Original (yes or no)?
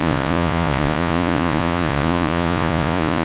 no